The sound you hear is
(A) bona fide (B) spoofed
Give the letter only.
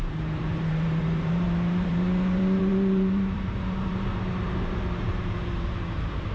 B